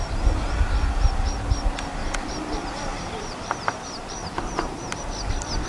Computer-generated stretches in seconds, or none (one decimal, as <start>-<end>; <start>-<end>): 2.0-5.0